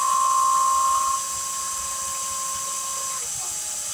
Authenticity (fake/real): real